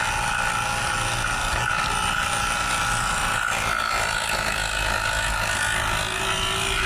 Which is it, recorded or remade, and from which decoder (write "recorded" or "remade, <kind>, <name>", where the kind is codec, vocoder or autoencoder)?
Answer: recorded